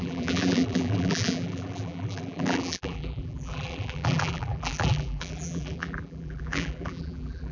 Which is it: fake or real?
fake